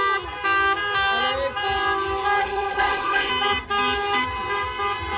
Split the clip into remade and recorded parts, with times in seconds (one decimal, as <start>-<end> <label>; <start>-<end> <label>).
0.0-2.4 recorded; 2.4-3.3 remade; 3.3-5.2 recorded